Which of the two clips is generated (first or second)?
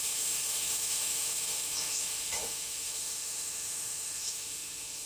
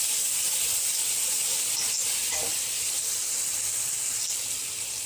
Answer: first